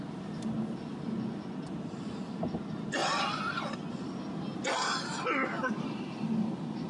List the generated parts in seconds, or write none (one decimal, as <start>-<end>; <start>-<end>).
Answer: none

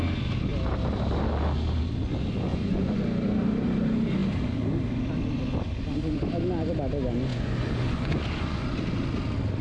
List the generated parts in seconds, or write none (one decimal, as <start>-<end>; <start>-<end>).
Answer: 2.5-3.0; 7.3-8.7

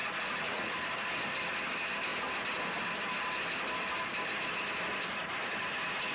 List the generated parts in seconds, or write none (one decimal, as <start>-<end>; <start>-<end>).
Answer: 0.0-0.7

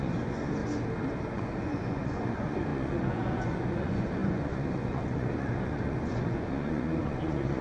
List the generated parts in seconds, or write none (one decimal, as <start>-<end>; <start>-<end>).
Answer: 0.0-0.6; 1.3-7.6

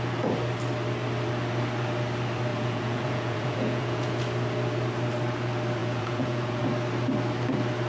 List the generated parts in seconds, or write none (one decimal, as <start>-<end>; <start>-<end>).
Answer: 2.5-4.2; 5.8-6.6